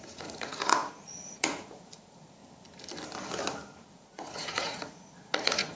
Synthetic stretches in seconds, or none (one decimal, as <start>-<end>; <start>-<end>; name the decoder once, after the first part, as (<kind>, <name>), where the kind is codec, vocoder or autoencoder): 0.0-2.4 (vocoder, Vocos); 3.9-5.8

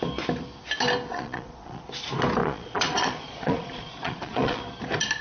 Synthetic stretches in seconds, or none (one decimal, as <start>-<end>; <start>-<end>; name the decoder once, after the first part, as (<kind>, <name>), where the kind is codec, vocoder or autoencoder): 1.1-1.9 (vocoder, Vocos); 2.4-4.6

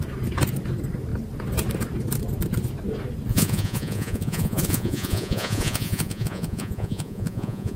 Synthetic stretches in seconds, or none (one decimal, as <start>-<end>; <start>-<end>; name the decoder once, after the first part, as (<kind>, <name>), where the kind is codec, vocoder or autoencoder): 3.3-7.8 (vocoder, Vocos)

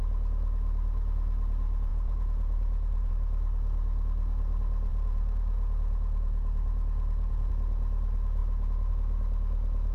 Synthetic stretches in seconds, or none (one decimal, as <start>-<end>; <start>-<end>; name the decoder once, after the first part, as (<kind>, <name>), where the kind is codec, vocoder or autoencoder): 1.9-3.1 (vocoder, Vocos); 4.9-7.5

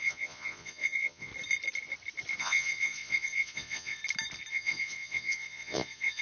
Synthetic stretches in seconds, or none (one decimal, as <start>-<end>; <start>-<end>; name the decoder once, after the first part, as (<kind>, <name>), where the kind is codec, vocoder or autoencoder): 0.0-1.3 (vocoder, Vocos); 2.4-4.0; 4.5-6.2

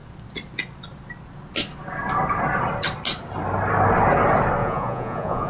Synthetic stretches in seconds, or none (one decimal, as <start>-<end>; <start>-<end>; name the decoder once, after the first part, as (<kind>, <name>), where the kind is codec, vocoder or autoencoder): 4.6-5.5 (vocoder, Vocos)